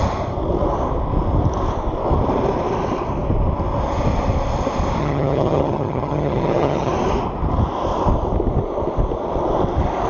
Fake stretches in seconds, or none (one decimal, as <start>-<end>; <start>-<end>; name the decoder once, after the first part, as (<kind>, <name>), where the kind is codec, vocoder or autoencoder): 5.0-6.9 (vocoder, HiFi-GAN)